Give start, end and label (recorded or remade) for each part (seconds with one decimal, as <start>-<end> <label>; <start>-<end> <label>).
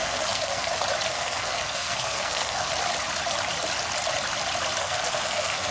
0.0-0.7 remade; 0.7-1.1 recorded; 1.1-2.7 remade; 2.7-4.8 recorded; 4.8-5.7 remade